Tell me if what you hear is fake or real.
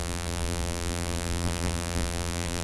fake